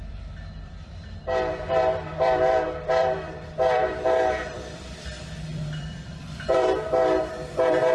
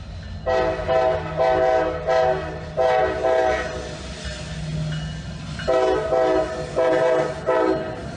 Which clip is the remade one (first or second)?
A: first